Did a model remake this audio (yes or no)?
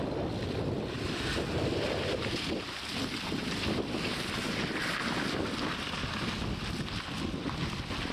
no